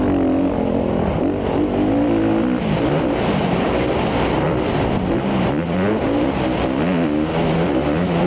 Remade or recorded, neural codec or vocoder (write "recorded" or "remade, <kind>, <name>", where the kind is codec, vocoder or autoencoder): recorded